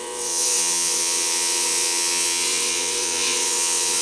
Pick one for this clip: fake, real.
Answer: fake